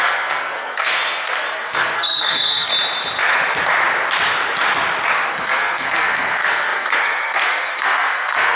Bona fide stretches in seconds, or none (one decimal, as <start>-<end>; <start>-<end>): 2.7-5.3